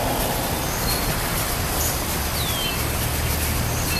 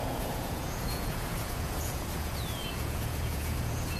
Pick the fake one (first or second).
second